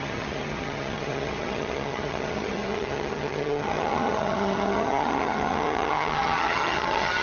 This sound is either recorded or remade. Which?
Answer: remade